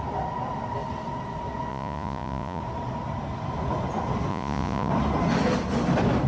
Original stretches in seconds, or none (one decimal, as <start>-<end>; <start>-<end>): 0.0-1.7; 2.6-4.3; 4.9-6.3